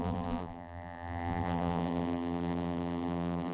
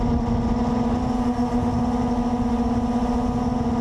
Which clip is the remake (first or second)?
first